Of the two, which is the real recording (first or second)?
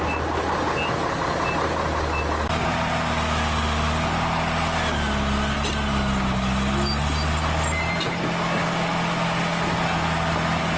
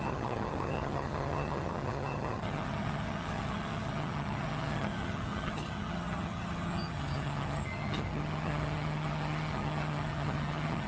first